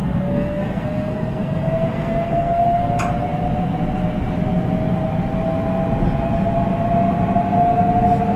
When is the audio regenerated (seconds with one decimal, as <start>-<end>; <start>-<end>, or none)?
0.0-2.9